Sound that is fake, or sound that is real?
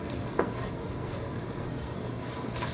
fake